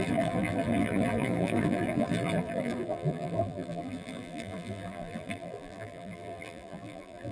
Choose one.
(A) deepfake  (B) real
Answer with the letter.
A